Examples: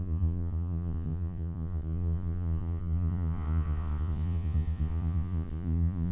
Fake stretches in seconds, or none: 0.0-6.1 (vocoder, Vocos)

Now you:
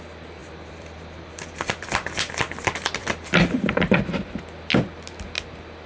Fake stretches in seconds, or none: 0.4-2.3 (vocoder, BigVGAN v2); 3.0-4.0

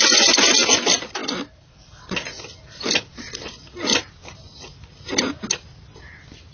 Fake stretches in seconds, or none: 1.2-4.9 (vocoder, BigVGAN v2)

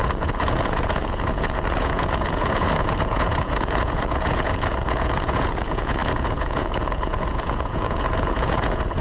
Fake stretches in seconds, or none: 0.0-9.0 (vocoder, Vocos)